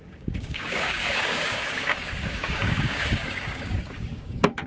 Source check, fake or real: fake